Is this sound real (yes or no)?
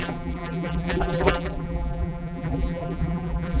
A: no